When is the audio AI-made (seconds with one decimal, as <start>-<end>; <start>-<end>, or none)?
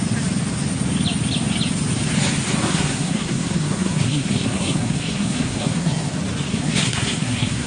2.7-6.1; 6.5-7.7